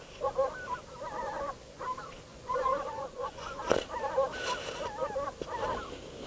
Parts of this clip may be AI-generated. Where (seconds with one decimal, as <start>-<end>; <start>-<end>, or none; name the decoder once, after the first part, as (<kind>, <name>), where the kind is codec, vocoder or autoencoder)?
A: 1.2-1.8 (vocoder, Vocos); 2.3-3.6